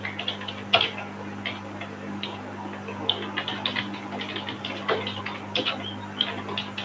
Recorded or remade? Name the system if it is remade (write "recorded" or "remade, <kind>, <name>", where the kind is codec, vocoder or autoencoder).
recorded